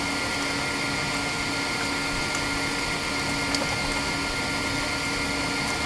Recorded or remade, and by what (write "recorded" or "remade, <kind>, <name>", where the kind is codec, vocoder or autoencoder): recorded